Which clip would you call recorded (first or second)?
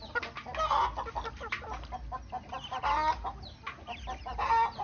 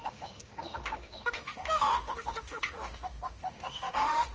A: first